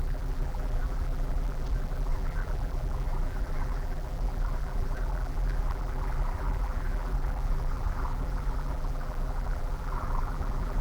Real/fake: fake